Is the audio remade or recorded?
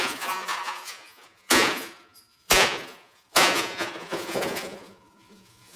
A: remade